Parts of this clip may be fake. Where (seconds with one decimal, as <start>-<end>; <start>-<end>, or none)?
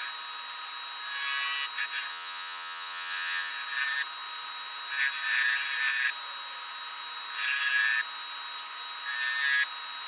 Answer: 2.1-3.5